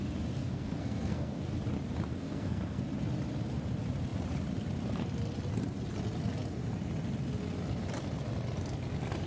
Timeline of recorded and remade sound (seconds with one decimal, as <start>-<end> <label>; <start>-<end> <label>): 0.0-0.4 recorded; 0.4-1.4 remade; 1.4-2.1 recorded; 2.1-2.8 remade; 2.8-9.3 recorded